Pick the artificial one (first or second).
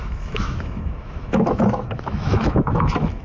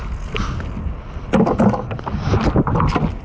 first